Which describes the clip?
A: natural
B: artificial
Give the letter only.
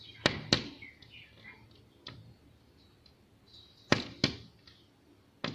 A